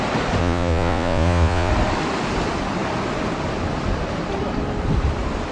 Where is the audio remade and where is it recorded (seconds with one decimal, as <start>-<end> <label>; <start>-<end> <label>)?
0.0-0.4 recorded; 0.4-1.7 remade; 1.7-5.5 recorded